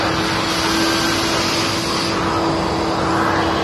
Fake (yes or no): no